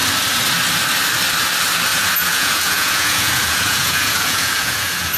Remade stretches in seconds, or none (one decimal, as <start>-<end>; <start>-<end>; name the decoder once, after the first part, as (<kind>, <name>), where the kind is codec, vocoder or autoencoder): 1.9-5.2 (vocoder, Vocos)

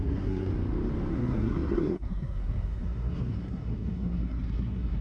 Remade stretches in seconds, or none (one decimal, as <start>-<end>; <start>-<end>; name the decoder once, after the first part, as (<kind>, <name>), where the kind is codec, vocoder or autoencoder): 0.0-0.5 (codec, SNAC); 1.1-5.0

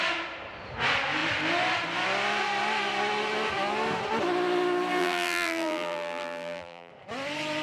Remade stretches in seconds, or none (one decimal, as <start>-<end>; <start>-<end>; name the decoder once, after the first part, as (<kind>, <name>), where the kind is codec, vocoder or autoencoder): 5.0-6.9 (vocoder, BigVGAN v2)

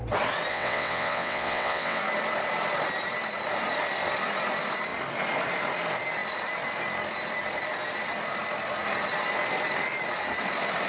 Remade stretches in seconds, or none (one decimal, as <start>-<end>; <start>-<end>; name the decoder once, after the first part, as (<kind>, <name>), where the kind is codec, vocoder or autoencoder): 0.5-2.0 (vocoder, WaveNeXt)

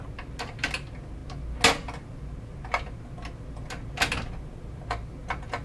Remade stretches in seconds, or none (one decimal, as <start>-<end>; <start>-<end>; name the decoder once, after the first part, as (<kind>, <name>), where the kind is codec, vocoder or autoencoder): none

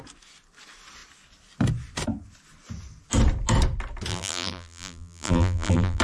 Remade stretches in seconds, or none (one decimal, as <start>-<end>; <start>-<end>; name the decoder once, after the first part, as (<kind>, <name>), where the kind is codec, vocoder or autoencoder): 4.1-6.0 (vocoder, BigVGAN v2)

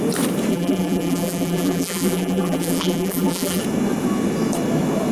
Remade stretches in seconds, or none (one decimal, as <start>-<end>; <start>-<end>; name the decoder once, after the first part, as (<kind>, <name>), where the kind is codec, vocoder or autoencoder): 0.5-3.6 (vocoder, BigVGAN v2)

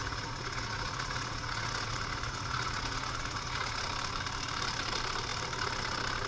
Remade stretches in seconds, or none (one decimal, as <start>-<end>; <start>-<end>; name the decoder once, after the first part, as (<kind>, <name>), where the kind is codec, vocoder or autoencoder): 0.0-3.8 (vocoder, Vocos)